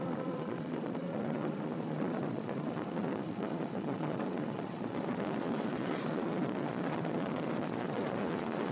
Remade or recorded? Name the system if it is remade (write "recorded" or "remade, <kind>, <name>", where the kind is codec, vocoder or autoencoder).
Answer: remade, vocoder, Vocos